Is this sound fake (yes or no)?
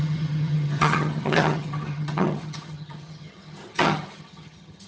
yes